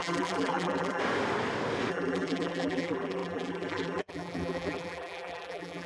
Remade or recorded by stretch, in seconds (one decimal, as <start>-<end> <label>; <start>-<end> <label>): 0.0-1.0 remade; 1.0-1.9 recorded; 1.9-5.9 remade